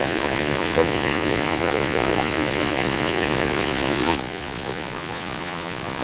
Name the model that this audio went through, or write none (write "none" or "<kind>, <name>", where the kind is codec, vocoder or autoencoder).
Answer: vocoder, Vocos